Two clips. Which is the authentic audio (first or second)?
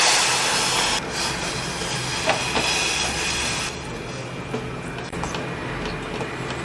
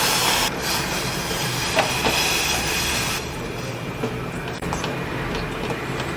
first